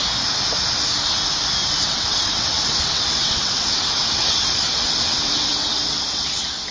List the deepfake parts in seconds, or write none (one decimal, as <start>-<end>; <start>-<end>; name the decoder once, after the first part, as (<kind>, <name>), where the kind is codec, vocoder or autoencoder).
1.7-6.7 (vocoder, WaveNeXt)